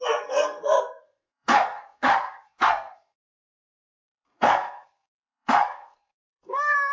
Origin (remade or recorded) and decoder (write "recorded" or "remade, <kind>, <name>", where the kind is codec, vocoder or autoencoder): remade, codec, SNAC